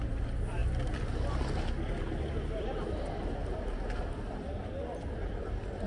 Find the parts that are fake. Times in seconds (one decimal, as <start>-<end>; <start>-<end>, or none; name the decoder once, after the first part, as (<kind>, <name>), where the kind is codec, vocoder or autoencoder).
none